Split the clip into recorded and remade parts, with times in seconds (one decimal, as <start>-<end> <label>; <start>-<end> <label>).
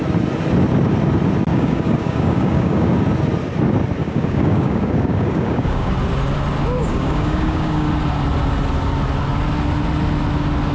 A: 0.0-1.5 recorded; 1.5-2.9 remade; 2.9-4.0 recorded; 4.0-5.9 remade; 5.9-6.8 recorded; 6.8-7.9 remade; 7.9-10.7 recorded